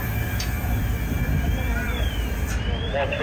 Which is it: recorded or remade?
remade